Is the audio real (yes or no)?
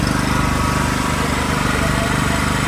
yes